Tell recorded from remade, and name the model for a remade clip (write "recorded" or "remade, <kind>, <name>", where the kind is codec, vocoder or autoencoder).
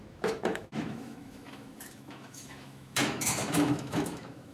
remade, autoencoder, DAC-VAE